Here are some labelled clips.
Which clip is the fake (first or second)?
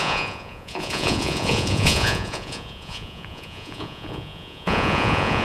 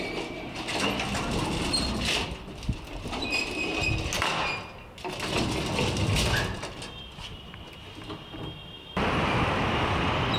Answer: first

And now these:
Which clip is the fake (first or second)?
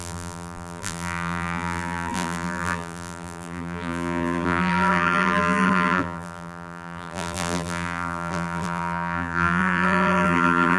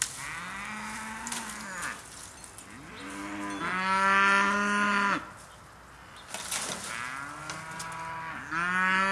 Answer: first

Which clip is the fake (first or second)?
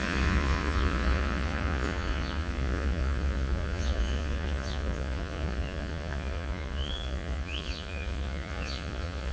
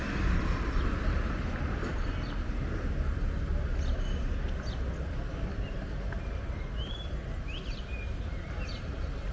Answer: first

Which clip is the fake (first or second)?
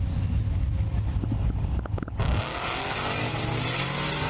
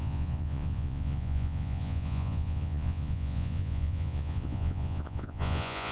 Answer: second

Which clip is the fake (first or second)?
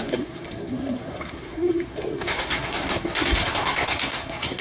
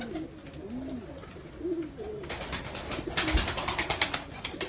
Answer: first